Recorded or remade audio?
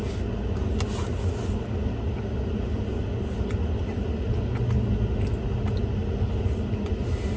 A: recorded